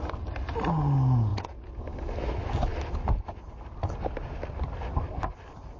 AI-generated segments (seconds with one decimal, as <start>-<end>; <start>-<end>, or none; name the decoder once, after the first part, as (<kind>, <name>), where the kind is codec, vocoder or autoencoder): 1.3-1.8 (vocoder, Vocos)